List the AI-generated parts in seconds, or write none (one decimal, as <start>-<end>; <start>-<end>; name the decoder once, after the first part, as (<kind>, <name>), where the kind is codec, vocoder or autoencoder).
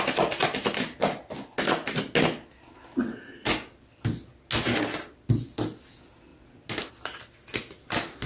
none